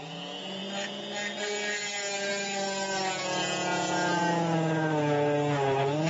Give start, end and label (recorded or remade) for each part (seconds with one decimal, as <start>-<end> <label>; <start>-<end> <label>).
0.0-6.1 recorded